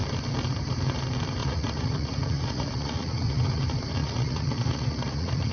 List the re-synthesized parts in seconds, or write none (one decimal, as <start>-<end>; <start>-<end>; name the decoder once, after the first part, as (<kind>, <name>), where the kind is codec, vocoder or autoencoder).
1.4-3.6 (vocoder, Vocos); 4.0-5.5